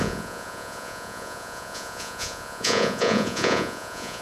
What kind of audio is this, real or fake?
fake